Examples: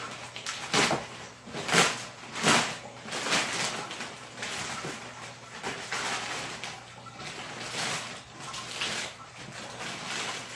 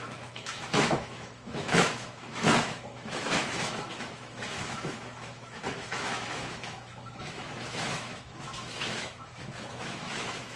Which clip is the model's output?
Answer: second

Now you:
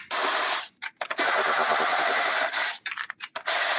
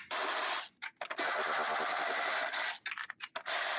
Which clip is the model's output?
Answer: first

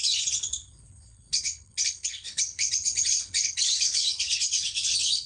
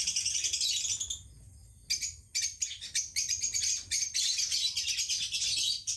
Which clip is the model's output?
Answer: first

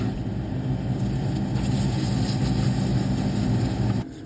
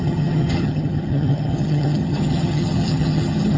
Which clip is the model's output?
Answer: second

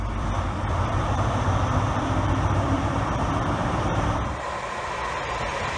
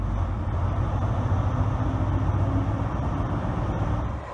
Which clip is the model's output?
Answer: first